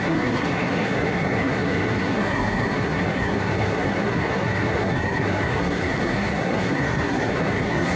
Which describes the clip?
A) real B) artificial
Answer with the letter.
B